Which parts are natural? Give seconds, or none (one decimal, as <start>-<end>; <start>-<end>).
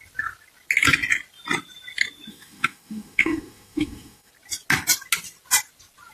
0.0-2.3; 4.3-6.1